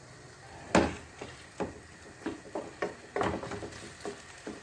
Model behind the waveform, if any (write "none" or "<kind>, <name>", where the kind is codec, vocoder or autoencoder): none